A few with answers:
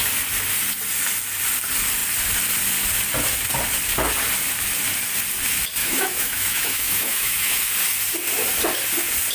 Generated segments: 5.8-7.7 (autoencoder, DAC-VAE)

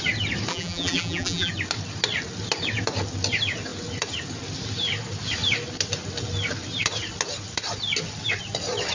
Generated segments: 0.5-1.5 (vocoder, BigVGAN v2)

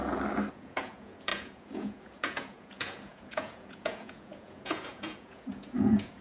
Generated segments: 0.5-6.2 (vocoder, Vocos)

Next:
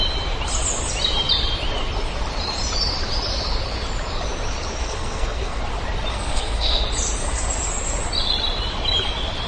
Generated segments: 4.8-5.6 (codec, SNAC); 6.1-6.8

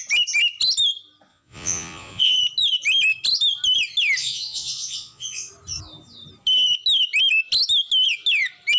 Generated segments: 1.3-2.3 (vocoder, Vocos); 4.2-5.5